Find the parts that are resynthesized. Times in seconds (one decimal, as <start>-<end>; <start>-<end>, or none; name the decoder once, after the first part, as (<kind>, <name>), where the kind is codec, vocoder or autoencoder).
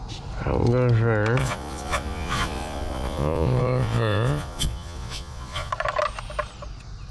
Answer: 1.4-5.7 (vocoder, Vocos)